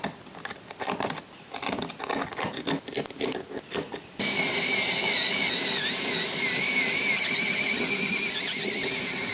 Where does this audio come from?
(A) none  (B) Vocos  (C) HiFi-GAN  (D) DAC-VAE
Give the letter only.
A